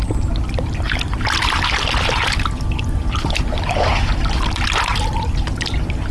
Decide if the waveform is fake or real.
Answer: real